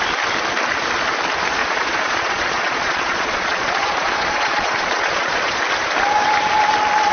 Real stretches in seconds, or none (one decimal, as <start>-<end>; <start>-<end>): 0.0-1.6; 5.6-7.1